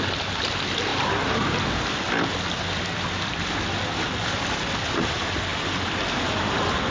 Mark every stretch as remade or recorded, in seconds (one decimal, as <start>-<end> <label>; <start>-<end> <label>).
0.0-6.9 recorded